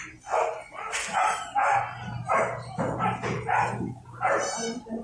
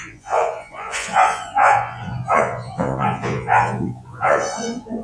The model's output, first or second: second